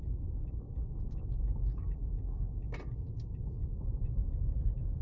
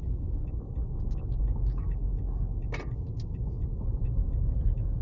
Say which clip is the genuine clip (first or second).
second